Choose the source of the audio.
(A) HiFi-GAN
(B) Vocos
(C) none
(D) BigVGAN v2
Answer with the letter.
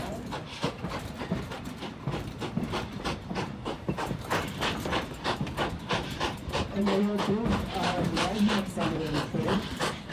D